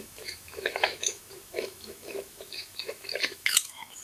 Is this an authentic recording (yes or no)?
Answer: no